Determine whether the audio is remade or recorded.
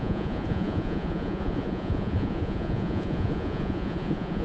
remade